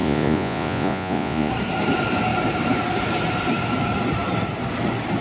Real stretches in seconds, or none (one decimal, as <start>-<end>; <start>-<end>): 1.5-5.2